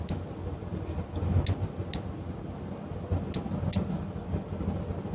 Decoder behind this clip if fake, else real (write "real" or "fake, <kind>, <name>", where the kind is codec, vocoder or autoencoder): real